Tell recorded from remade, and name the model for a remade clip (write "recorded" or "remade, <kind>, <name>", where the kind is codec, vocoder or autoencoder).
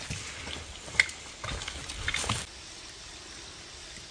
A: recorded